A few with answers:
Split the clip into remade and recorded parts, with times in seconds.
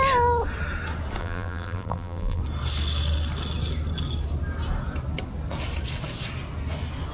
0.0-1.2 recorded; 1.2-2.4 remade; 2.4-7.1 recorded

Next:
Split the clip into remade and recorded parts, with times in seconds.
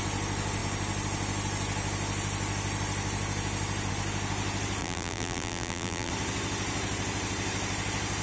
0.0-4.8 recorded; 4.8-6.1 remade; 6.1-8.2 recorded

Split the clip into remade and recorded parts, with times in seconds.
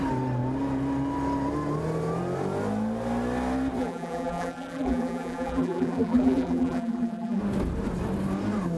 0.0-3.8 recorded; 3.8-7.4 remade; 7.4-8.8 recorded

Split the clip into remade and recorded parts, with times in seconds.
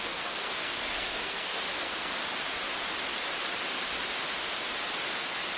0.0-2.2 remade; 2.2-5.6 recorded